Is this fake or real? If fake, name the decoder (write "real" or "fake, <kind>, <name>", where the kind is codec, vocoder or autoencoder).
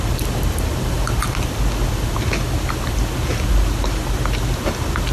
real